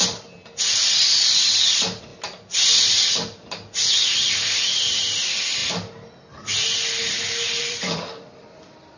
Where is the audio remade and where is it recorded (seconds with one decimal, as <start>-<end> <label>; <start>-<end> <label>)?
0.0-2.1 remade; 2.1-2.8 recorded; 2.8-5.6 remade; 5.6-7.6 recorded; 7.6-9.0 remade